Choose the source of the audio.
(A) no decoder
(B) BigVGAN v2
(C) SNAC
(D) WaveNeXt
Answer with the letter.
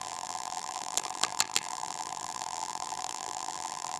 B